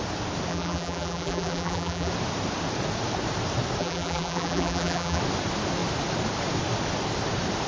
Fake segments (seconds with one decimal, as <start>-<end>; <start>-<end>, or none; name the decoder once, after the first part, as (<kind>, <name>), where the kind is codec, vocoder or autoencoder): 0.5-2.1 (vocoder, BigVGAN v2); 3.8-5.2